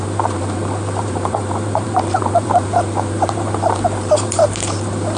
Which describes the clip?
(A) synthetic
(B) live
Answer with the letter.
A